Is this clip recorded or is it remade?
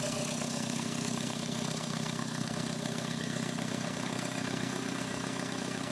remade